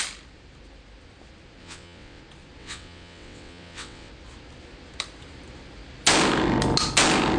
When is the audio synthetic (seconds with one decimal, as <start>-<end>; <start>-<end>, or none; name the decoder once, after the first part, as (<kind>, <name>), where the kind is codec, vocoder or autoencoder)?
1.6-2.2 (vocoder, WaveNeXt); 2.6-4.1